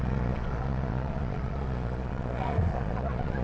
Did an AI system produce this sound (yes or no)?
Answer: yes